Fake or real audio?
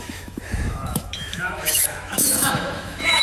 fake